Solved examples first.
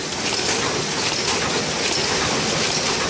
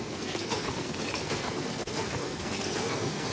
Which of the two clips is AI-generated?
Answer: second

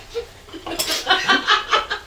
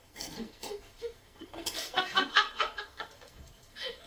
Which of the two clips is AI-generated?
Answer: second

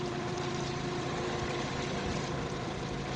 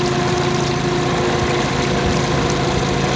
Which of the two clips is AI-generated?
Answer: first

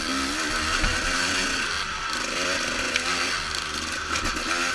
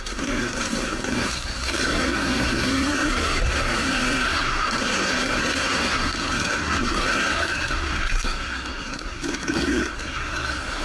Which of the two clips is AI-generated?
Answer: second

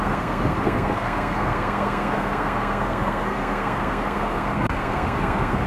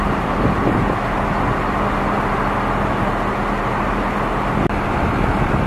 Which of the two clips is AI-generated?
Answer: first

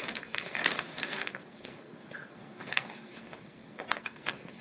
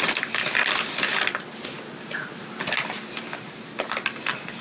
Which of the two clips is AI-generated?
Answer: first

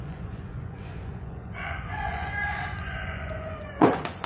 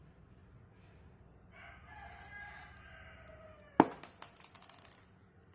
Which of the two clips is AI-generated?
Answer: first